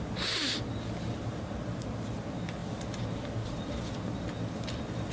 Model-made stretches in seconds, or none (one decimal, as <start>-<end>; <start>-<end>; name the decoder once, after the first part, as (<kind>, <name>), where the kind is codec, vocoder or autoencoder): 2.6-3.7 (vocoder, BigVGAN v2)